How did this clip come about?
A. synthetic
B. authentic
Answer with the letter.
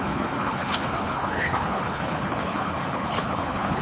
A